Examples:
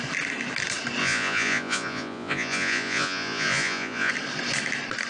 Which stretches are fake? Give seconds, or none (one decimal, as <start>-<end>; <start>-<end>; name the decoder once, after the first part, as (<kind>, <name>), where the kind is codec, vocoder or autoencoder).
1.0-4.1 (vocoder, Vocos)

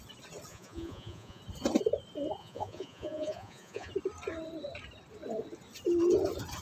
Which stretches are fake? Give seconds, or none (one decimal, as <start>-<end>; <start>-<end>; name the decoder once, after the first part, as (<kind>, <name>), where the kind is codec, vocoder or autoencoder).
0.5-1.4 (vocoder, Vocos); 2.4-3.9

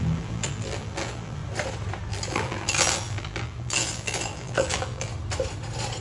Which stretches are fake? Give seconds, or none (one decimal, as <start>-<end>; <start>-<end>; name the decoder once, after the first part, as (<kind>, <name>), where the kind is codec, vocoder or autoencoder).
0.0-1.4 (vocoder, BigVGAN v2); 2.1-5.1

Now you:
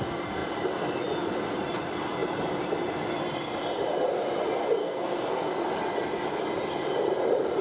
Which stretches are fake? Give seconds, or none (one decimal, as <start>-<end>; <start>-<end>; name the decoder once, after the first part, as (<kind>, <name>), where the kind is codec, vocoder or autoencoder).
4.8-5.5 (codec, SNAC)

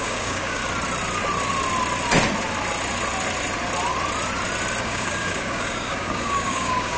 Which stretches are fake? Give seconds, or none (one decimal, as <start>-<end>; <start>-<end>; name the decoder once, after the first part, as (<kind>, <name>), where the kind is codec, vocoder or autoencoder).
0.0-0.6 (codec, DAC); 4.8-7.0